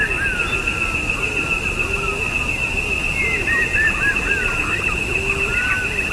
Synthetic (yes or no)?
no